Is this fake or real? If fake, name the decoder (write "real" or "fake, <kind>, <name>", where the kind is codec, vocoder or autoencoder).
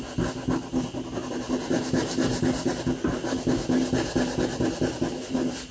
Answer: real